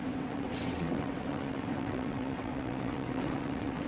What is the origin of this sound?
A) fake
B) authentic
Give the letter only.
A